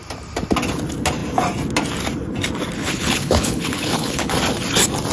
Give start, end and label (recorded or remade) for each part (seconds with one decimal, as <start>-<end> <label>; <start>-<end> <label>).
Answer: 0.0-2.8 recorded; 2.8-4.4 remade; 4.4-5.1 recorded